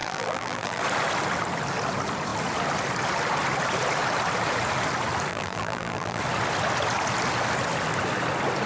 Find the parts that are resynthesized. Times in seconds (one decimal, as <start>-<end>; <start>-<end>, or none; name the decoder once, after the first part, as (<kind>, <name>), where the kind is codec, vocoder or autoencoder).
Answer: 0.0-0.8 (vocoder, BigVGAN v2); 5.3-6.2